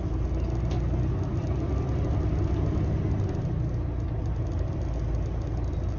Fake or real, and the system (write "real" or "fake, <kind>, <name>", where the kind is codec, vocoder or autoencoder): real